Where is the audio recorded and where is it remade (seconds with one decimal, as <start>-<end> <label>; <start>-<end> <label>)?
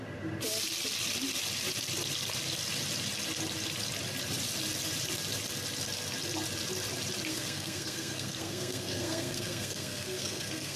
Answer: 0.0-7.3 recorded; 7.3-10.8 remade